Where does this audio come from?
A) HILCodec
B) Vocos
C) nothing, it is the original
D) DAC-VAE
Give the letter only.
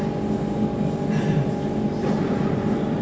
C